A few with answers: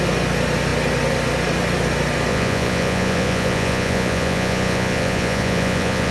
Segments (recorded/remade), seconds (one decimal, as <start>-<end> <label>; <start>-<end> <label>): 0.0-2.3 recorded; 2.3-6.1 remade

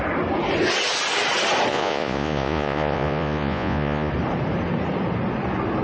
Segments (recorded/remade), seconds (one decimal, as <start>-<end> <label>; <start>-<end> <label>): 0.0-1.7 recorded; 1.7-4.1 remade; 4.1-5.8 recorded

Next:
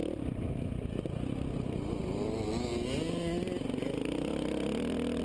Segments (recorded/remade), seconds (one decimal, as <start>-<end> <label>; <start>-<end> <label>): 0.0-5.2 recorded

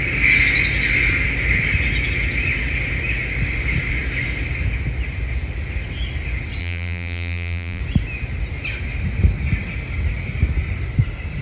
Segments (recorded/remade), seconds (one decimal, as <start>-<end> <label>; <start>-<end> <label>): 0.0-6.6 recorded; 6.6-7.8 remade; 7.8-11.4 recorded

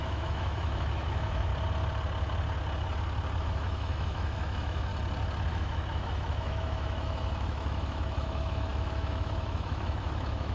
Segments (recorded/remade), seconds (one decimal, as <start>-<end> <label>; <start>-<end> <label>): 0.0-1.5 remade; 1.5-3.4 recorded; 3.4-4.9 remade; 4.9-5.5 recorded; 5.5-10.5 remade